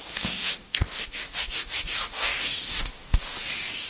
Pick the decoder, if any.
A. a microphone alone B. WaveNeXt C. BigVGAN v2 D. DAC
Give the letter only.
D